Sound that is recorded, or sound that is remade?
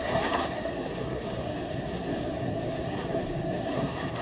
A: remade